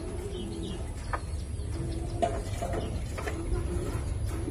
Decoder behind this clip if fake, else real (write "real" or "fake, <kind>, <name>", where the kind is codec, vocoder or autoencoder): real